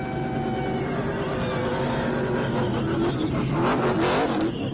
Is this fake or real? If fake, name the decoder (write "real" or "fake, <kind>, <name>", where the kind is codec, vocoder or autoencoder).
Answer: real